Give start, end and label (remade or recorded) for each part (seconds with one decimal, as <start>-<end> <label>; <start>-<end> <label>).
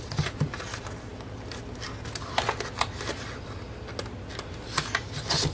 0.0-5.5 recorded